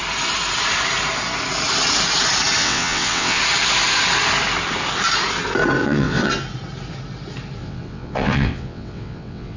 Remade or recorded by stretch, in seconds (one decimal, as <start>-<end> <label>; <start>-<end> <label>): 0.0-2.6 recorded; 2.6-3.4 remade; 3.4-5.8 recorded; 5.8-6.3 remade; 6.3-7.6 recorded; 7.6-9.6 remade